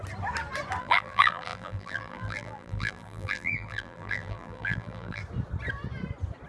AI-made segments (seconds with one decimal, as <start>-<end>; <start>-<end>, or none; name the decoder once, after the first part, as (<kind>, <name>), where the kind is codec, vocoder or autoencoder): 0.8-5.2 (vocoder, BigVGAN v2)